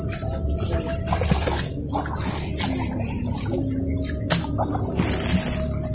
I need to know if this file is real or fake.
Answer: real